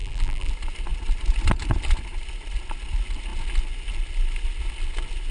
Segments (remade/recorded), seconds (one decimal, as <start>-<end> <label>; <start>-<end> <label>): 0.0-0.5 remade; 0.5-5.3 recorded